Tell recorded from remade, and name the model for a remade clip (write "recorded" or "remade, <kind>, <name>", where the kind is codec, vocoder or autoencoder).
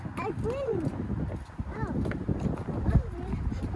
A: recorded